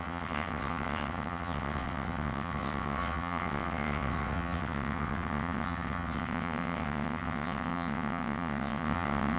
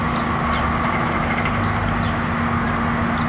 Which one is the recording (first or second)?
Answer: second